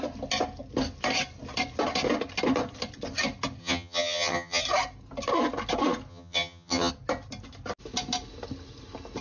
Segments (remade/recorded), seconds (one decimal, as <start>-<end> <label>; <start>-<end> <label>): 0.0-3.6 recorded; 3.6-4.6 remade; 4.6-6.1 recorded; 6.1-6.9 remade; 6.9-9.2 recorded